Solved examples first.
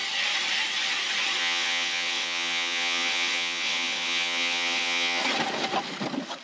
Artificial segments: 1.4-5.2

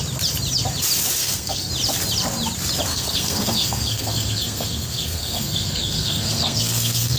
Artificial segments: 1.2-1.7; 2.9-7.2